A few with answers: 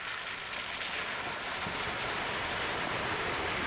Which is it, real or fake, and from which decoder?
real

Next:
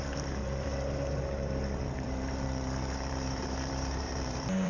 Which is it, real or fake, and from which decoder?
fake, vocoder, BigVGAN v2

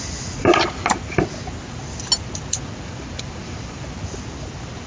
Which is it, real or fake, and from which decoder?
real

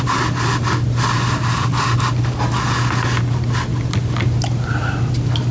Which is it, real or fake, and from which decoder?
real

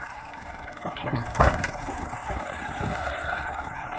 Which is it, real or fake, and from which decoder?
fake, codec, SNAC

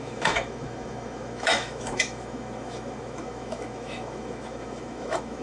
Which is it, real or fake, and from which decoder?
fake, autoencoder, DAC-VAE